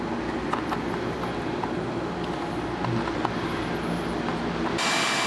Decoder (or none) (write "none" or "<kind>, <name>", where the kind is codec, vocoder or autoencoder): none